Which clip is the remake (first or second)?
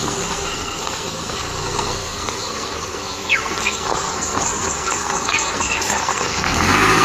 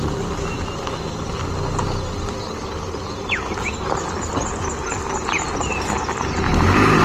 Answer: first